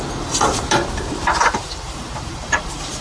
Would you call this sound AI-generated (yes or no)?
yes